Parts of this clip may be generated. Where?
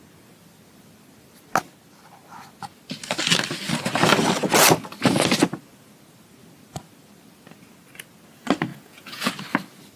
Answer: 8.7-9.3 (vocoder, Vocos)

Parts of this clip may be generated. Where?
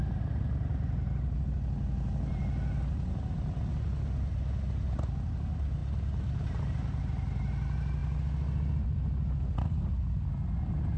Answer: none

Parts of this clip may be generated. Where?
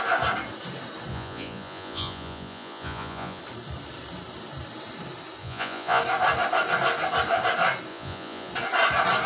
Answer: 1.1-3.4 (vocoder, Vocos); 5.4-6.0; 7.9-8.5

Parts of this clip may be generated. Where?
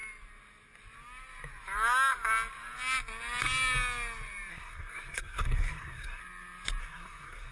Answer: 4.5-6.2 (codec, SNAC); 6.8-7.5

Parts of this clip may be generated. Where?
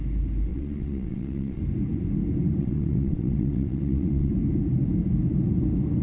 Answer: 0.5-1.6 (vocoder, WaveNeXt); 2.6-4.3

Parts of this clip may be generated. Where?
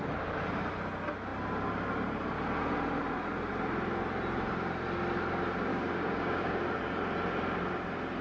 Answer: 5.7-6.6 (codec, DAC)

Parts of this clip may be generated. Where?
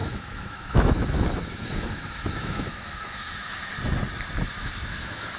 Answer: 0.0-3.7 (autoencoder, DAC-VAE); 4.6-5.4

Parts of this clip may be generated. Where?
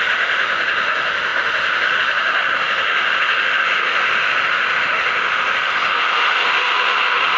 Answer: 0.0-7.4 (autoencoder, DAC-VAE)